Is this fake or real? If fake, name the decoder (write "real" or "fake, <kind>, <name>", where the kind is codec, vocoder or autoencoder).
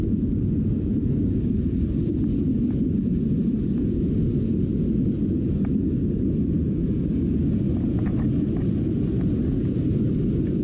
real